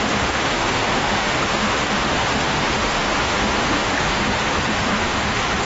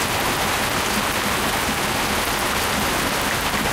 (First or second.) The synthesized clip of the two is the first